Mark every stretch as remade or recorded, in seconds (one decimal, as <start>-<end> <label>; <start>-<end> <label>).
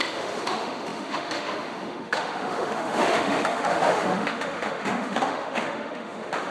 0.0-6.5 remade